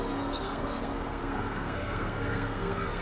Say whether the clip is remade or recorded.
remade